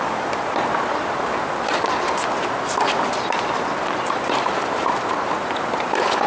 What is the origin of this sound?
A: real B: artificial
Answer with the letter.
A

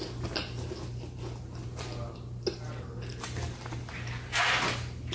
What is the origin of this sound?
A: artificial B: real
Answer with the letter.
B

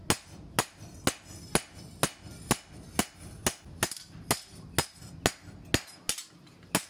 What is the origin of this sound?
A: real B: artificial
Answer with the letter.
A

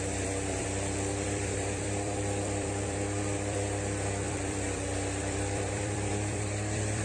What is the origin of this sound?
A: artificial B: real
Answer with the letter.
A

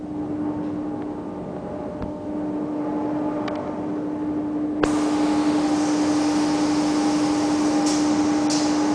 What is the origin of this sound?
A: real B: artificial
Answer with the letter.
A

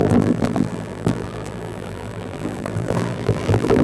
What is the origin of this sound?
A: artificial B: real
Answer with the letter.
A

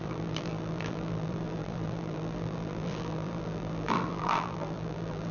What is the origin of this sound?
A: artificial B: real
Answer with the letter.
A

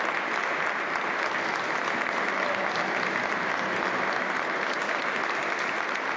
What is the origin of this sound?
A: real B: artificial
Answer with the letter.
A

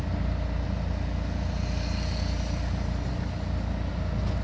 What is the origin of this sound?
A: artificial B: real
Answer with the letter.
B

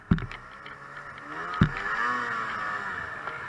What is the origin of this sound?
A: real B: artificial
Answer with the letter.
A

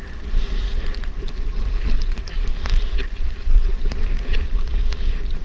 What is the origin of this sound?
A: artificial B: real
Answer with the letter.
A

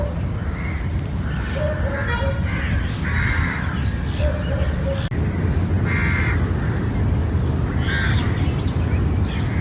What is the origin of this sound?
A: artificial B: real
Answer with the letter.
B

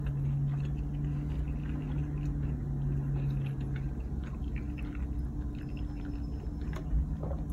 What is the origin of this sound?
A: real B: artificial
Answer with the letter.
A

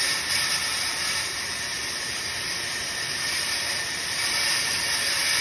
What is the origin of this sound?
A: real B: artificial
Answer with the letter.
B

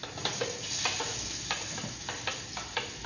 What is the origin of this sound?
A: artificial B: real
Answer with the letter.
B